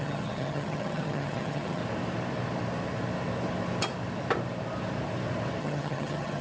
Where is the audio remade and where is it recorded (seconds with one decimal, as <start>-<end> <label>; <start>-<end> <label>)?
0.0-1.8 remade; 1.8-5.6 recorded; 5.6-6.4 remade

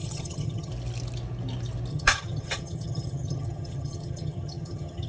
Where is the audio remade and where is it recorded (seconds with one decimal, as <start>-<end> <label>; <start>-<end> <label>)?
0.0-0.7 remade; 0.7-1.9 recorded; 1.9-5.1 remade